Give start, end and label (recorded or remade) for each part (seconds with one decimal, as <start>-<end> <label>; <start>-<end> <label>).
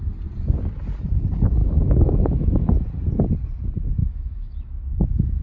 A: 0.0-1.6 recorded; 1.6-2.7 remade; 2.7-4.0 recorded; 4.0-5.4 remade